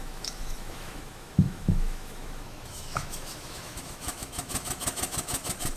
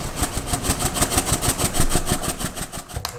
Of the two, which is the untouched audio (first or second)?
second